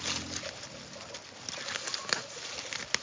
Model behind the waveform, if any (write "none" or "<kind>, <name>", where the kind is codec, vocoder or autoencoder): none